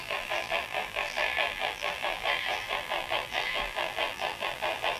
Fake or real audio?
fake